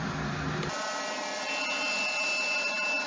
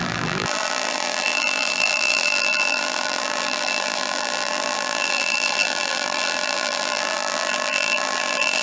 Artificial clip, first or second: second